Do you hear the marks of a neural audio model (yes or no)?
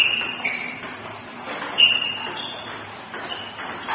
no